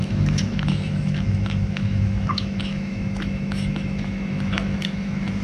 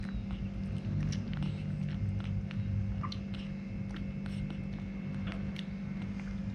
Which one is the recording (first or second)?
second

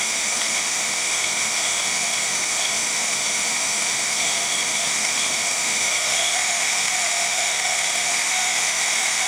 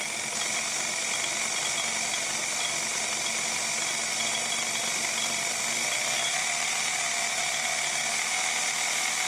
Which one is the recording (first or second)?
second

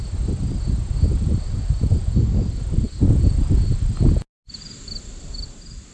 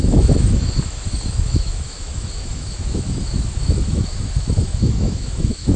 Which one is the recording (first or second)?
first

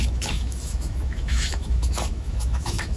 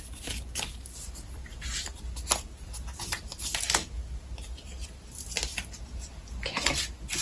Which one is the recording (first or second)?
second